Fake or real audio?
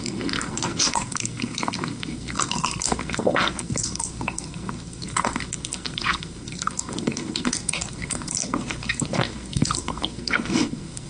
fake